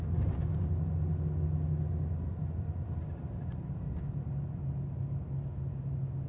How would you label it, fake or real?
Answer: real